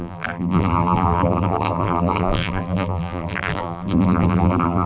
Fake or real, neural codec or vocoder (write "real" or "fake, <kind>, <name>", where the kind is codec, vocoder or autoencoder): fake, vocoder, BigVGAN v2